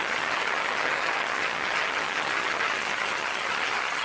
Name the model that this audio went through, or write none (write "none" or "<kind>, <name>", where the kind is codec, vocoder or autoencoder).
vocoder, HiFi-GAN